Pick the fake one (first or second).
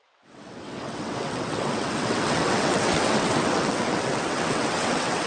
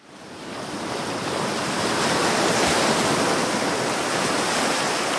first